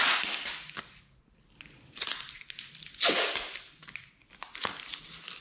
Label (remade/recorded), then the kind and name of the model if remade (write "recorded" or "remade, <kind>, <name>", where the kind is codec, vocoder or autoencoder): recorded